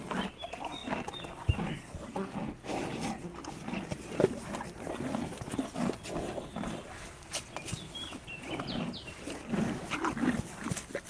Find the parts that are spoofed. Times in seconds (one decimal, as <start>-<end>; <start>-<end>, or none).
none